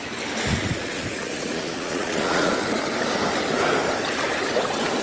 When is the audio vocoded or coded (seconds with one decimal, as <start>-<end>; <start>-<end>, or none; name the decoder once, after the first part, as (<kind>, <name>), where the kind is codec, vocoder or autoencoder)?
0.5-2.5 (vocoder, Vocos)